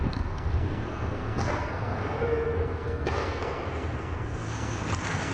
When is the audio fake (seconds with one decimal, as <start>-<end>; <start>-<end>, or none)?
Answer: 0.0-5.3